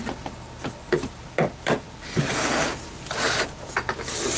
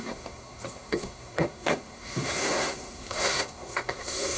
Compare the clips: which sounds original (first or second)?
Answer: first